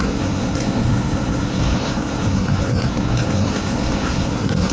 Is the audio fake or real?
fake